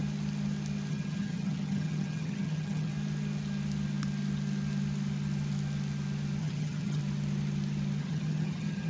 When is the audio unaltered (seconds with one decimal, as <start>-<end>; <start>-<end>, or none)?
0.0-0.9; 2.9-6.4; 7.0-8.0